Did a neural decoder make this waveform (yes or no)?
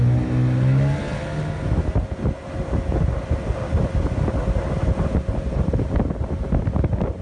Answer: no